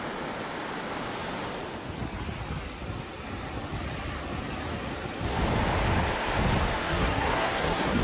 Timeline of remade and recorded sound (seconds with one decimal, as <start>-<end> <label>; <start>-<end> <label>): 0.0-6.8 recorded; 6.8-8.0 remade